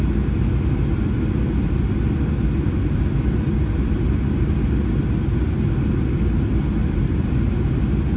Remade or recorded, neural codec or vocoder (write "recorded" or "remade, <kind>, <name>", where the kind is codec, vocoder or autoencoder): recorded